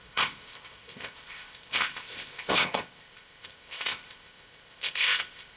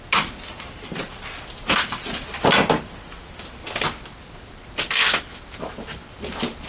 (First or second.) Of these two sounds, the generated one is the first